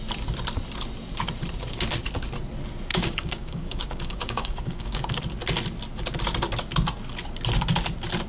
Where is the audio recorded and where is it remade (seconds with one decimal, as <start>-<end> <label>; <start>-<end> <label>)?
0.0-2.9 recorded; 2.9-5.2 remade; 5.2-8.3 recorded